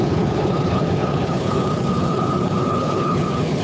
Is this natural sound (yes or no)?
no